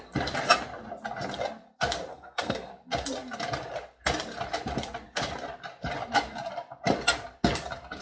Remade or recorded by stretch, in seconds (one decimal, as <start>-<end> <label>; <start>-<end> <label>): 0.0-2.1 recorded; 2.1-2.7 remade; 2.7-8.0 recorded